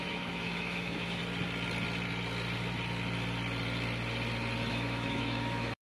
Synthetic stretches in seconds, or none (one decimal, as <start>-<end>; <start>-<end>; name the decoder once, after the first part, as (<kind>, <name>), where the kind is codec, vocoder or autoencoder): 0.0-1.2 (autoencoder, DAC-VAE); 4.7-5.9